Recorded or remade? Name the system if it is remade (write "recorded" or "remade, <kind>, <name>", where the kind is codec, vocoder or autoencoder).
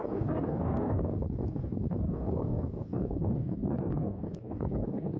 remade, codec, DAC